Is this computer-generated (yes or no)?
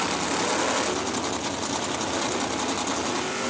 no